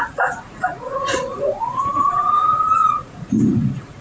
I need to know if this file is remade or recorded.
remade